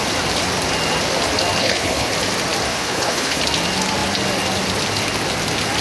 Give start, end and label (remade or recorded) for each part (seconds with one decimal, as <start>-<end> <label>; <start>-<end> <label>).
0.0-1.6 recorded; 1.6-2.1 remade; 2.1-2.7 recorded; 2.7-3.4 remade; 3.4-5.8 recorded